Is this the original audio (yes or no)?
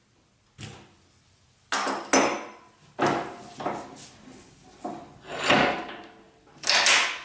yes